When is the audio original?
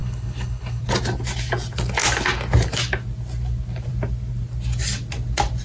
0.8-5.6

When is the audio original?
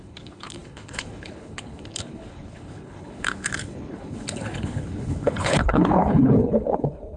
none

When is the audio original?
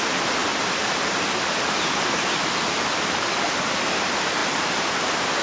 0.0-5.4